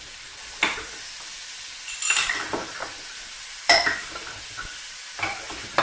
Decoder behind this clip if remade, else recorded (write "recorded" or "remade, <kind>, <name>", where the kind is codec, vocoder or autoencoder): remade, vocoder, BigVGAN v2